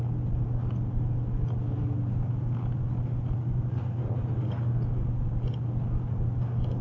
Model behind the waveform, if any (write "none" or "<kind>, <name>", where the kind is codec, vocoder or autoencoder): none